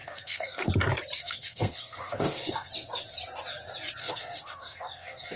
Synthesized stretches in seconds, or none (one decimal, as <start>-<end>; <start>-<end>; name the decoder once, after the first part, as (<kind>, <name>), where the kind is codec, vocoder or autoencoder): 0.0-0.7 (codec, SNAC); 1.2-2.7; 4.0-5.4